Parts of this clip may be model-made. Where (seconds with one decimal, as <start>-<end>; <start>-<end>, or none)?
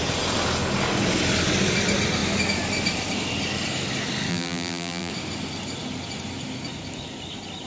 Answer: 4.3-5.1